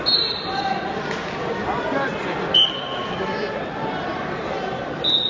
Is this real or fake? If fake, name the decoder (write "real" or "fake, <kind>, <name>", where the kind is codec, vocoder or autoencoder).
real